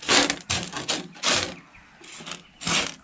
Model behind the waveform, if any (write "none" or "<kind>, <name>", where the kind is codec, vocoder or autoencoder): none